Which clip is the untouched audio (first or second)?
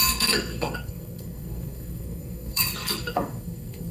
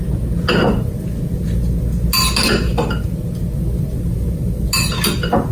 second